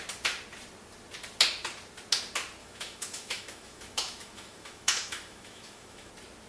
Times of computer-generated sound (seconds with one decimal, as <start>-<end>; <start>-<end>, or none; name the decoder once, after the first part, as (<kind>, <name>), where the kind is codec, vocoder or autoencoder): 2.6-6.1 (autoencoder, DAC-VAE)